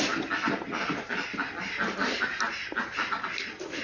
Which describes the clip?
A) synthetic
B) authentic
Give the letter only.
B